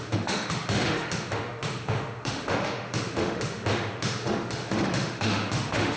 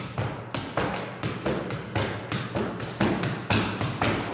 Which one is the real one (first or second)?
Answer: second